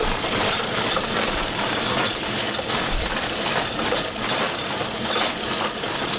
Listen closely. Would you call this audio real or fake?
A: fake